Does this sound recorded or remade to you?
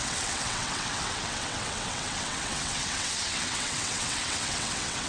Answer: remade